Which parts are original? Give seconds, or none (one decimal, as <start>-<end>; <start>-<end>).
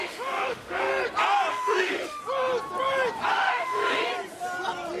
0.9-1.5; 2.2-3.3; 4.1-5.0